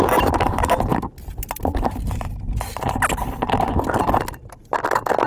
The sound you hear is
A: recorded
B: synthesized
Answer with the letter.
A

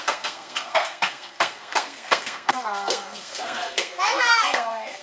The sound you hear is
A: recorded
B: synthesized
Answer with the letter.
B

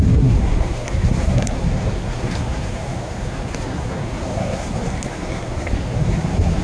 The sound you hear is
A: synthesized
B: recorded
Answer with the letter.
A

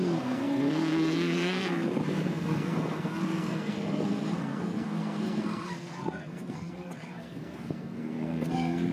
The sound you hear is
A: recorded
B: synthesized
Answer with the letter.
B